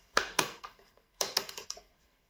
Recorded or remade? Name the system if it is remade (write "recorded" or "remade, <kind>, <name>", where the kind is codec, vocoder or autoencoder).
remade, codec, SNAC